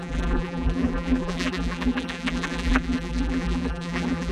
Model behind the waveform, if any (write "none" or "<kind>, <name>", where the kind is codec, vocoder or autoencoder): vocoder, BigVGAN v2